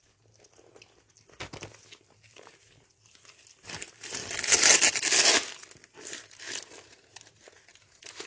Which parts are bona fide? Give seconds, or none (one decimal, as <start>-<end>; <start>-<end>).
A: 0.0-8.3